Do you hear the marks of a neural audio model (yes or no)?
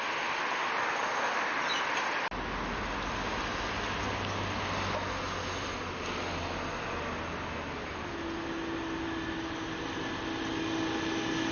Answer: no